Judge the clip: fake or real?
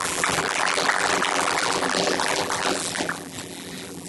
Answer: fake